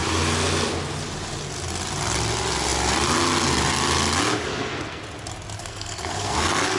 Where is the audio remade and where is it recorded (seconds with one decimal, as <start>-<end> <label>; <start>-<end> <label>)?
0.0-4.5 recorded; 4.5-5.0 remade; 5.0-5.6 recorded; 5.6-6.8 remade